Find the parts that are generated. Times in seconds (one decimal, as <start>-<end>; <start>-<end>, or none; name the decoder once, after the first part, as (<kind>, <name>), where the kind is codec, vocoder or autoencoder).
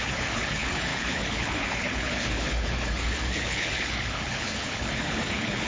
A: 0.0-5.7 (codec, HILCodec)